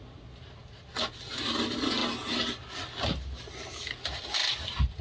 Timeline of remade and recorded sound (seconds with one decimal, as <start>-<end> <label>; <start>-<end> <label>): 0.0-5.0 recorded